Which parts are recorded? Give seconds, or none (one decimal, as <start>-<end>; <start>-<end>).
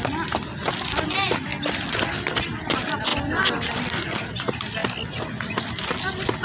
0.0-6.4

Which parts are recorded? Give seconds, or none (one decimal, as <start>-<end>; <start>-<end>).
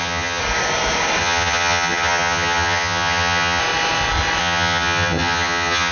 0.4-1.2; 3.6-4.4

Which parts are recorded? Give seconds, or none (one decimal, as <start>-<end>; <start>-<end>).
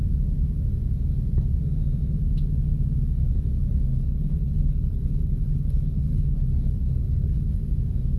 0.0-3.9; 7.6-8.2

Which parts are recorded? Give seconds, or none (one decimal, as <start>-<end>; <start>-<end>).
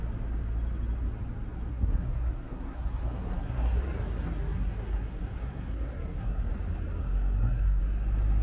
0.0-1.7; 6.5-7.0; 7.8-8.4